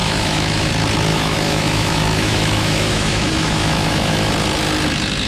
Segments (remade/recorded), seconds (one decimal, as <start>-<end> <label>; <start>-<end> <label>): 0.0-0.7 remade; 0.7-1.1 recorded; 1.1-4.3 remade; 4.3-5.3 recorded